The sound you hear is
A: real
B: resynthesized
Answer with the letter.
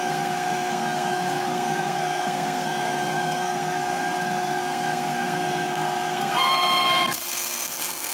B